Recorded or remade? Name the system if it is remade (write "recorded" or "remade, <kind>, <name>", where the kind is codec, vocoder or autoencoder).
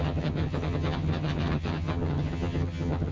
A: remade, vocoder, HiFi-GAN